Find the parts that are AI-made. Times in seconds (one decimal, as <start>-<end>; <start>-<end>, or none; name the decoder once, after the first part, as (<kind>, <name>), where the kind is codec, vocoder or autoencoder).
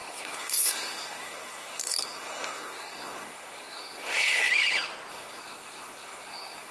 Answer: 0.0-4.5 (codec, SNAC); 5.1-6.7